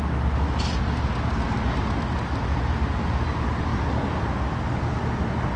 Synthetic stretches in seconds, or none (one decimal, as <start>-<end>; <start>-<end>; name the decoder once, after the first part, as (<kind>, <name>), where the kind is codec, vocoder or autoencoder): none